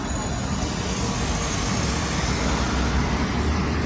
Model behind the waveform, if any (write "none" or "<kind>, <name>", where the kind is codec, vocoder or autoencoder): none